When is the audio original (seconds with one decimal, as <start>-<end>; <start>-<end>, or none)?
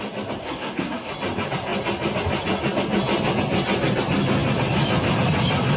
0.0-0.4; 1.1-5.8